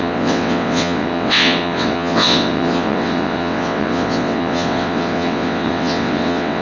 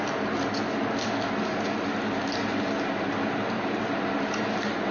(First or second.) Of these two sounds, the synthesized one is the first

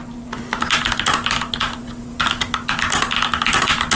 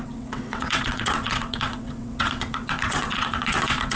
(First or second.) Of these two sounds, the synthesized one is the second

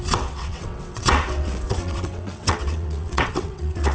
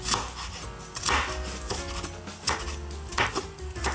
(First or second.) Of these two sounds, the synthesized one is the first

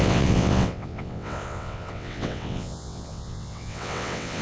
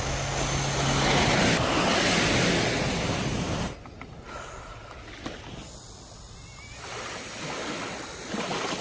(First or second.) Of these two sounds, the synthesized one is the first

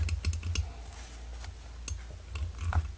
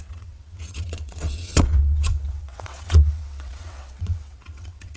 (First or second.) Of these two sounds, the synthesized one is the second